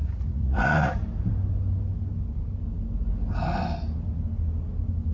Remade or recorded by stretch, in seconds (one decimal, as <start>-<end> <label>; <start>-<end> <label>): 0.0-0.9 remade; 0.9-5.1 recorded